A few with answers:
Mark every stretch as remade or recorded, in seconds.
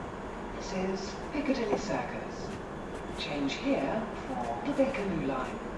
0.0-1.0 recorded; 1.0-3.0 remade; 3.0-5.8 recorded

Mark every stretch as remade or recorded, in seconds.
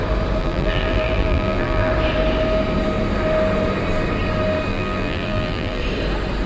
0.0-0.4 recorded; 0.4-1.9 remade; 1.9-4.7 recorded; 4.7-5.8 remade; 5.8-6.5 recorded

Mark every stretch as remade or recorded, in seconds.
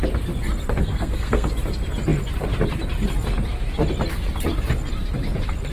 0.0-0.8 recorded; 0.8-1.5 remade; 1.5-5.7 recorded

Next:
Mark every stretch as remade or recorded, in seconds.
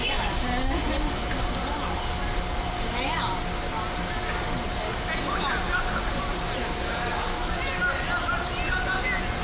0.0-9.4 recorded